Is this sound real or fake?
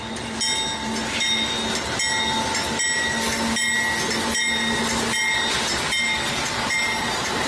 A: real